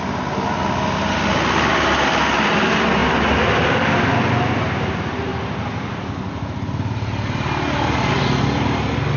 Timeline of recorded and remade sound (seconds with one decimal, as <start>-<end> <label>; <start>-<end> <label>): 0.0-9.2 recorded